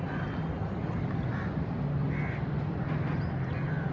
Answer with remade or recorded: recorded